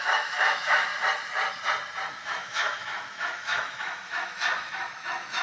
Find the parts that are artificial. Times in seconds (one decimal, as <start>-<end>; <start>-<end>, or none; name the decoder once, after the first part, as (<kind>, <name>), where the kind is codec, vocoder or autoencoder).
0.0-0.9 (autoencoder, DAC-VAE); 2.1-5.4